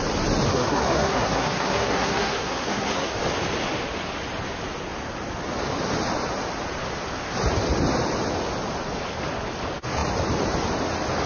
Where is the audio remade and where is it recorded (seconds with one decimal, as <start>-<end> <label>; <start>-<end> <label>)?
0.0-0.5 recorded; 0.5-3.1 remade; 3.1-11.3 recorded